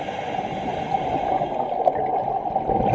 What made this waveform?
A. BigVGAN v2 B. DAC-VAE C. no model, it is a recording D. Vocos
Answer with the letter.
C